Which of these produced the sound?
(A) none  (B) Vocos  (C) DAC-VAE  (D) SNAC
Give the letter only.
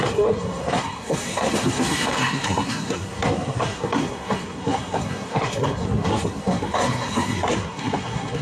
D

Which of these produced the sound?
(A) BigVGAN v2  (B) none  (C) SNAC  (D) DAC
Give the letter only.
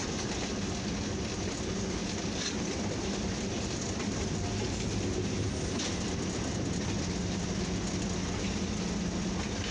B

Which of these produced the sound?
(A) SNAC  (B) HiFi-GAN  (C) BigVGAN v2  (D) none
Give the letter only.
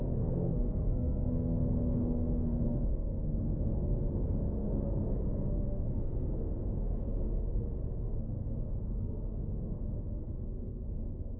A